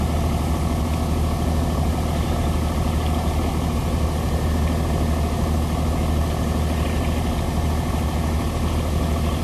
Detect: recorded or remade recorded